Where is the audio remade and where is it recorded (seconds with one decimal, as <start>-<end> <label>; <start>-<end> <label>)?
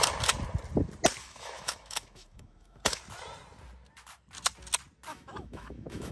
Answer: 0.0-1.2 recorded; 1.2-3.0 remade; 3.0-5.1 recorded; 5.1-6.1 remade